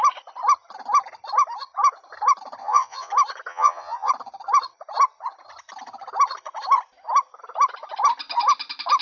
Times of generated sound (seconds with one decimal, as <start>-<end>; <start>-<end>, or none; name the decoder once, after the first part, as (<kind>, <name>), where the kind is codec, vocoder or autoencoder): 2.6-3.1 (vocoder, Vocos); 3.5-4.1